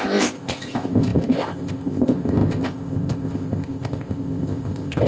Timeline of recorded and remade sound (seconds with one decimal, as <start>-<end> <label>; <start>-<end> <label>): 0.0-5.1 remade